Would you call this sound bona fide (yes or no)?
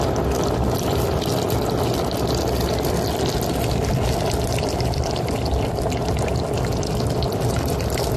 yes